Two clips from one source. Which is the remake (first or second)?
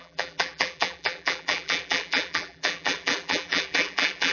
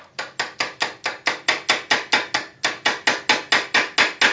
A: first